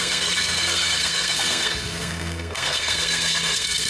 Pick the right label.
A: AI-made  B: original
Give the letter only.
A